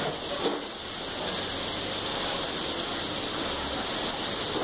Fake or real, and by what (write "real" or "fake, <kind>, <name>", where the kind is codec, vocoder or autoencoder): real